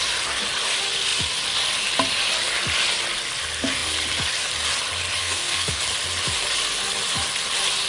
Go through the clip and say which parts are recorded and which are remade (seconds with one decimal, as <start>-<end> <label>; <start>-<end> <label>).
0.0-5.2 recorded; 5.2-5.8 remade; 5.8-7.9 recorded